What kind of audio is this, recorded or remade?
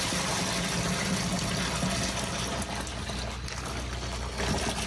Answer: recorded